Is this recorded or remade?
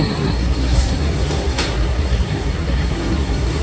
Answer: remade